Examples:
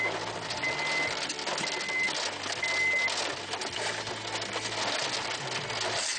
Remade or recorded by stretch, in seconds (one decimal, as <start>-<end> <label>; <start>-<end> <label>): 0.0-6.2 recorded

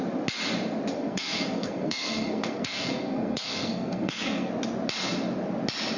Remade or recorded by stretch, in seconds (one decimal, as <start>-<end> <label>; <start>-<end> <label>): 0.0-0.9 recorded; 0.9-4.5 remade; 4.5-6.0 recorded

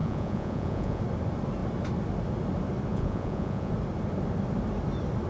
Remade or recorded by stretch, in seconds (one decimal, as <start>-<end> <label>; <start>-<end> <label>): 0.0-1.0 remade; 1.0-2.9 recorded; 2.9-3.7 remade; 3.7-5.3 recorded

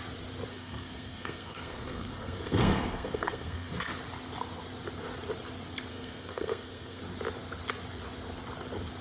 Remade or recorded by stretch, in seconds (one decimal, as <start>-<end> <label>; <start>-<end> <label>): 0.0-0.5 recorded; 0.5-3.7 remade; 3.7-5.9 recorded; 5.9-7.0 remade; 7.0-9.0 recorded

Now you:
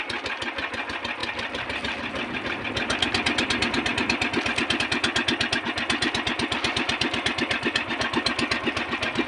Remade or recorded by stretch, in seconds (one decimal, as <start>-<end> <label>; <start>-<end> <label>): 0.0-9.3 recorded